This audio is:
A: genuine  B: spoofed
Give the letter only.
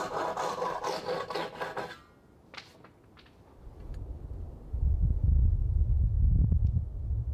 A